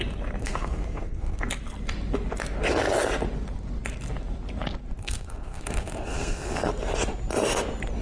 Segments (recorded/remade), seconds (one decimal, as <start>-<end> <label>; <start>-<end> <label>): 0.0-0.4 recorded; 0.4-1.5 remade; 1.5-5.0 recorded; 5.0-6.7 remade; 6.7-8.0 recorded